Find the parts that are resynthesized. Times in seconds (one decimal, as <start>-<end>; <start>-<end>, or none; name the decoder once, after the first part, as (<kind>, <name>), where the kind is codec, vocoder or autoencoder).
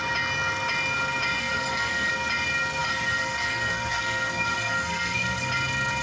1.4-2.1 (codec, SNAC); 2.8-5.5